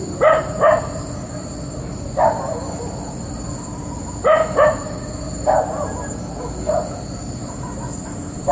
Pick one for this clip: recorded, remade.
recorded